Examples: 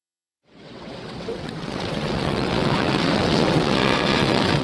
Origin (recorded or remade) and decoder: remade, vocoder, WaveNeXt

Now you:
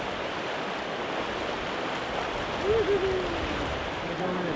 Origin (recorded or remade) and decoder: recorded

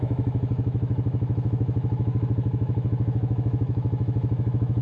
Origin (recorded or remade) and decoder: remade, autoencoder, DAC-VAE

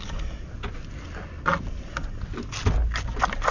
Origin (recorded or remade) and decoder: recorded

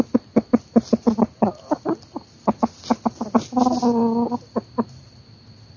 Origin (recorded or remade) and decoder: recorded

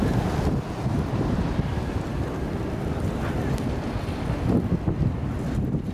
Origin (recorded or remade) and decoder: recorded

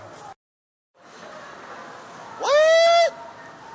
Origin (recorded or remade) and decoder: recorded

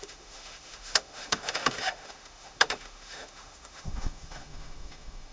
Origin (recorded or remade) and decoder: remade, autoencoder, DAC-VAE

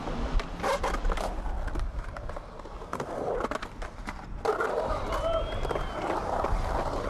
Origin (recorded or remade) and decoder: recorded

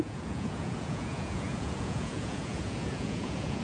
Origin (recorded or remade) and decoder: remade, vocoder, Vocos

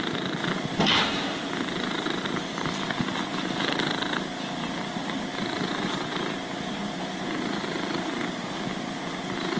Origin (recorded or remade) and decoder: recorded